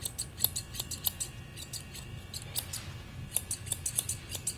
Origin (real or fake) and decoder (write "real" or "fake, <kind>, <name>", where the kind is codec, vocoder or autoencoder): real